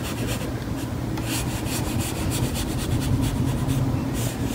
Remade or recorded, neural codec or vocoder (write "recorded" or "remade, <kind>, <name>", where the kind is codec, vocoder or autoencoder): recorded